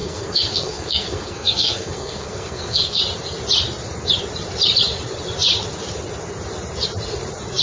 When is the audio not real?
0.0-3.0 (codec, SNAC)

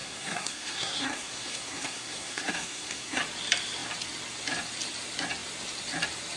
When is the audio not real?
0.0-3.2 (codec, SNAC)

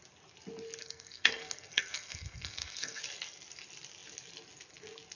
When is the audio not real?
0.8-3.0 (codec, SNAC)

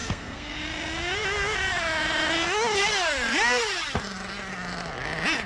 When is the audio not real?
0.0-0.6 (codec, SNAC)

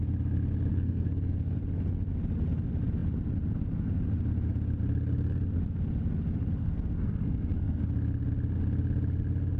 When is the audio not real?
0.7-1.6 (codec, SNAC); 6.6-7.8

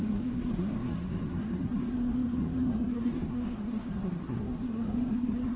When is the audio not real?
0.0-5.6 (codec, SNAC)

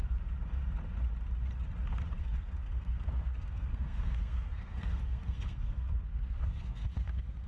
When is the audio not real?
2.2-7.5 (codec, SNAC)